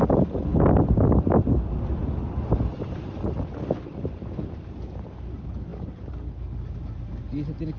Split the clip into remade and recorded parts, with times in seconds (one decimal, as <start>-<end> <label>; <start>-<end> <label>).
0.0-7.8 recorded